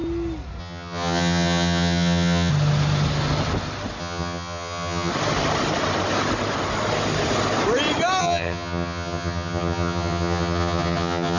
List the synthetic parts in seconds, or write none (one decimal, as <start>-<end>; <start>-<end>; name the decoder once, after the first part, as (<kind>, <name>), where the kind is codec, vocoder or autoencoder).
0.6-2.5 (vocoder, HiFi-GAN); 4.0-5.1; 8.2-11.4